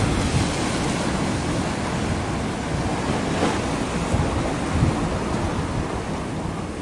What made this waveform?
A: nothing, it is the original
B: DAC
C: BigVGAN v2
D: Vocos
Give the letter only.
A